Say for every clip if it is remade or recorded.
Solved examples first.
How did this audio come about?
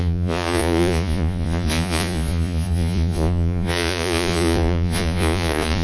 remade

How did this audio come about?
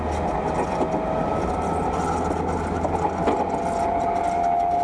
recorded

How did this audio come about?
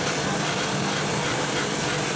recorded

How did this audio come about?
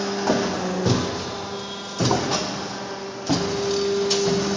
recorded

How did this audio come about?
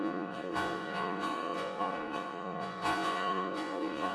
remade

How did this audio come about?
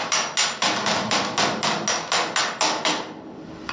recorded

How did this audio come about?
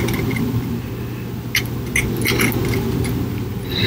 recorded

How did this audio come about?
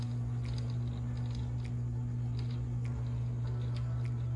recorded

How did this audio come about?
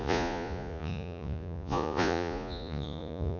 remade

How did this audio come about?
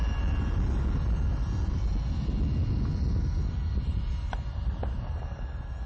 recorded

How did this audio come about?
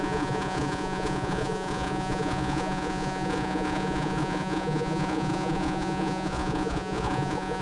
remade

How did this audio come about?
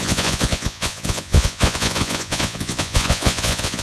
remade